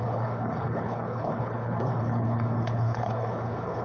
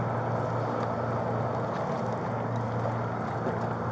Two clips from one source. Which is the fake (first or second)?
first